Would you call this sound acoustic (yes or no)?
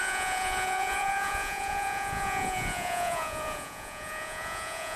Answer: no